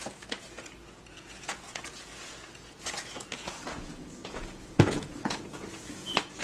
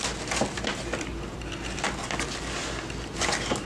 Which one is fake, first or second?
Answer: first